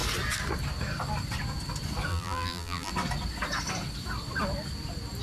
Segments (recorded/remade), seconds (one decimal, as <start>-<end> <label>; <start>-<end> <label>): 0.0-2.1 recorded; 2.1-2.9 remade; 2.9-5.2 recorded